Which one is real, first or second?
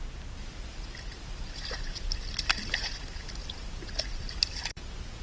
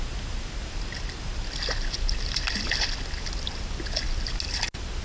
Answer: second